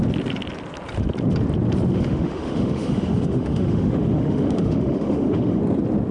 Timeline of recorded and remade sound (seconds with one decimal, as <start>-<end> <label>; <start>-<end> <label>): 0.0-1.9 recorded; 1.9-5.6 remade; 5.6-6.1 recorded